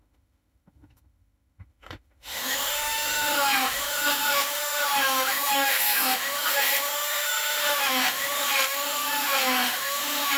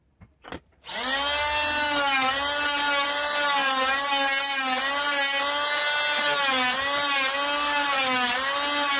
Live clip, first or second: second